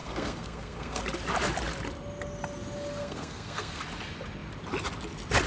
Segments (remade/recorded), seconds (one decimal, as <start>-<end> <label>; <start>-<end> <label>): 0.0-1.0 remade; 1.0-3.0 recorded; 3.0-3.8 remade; 3.8-5.5 recorded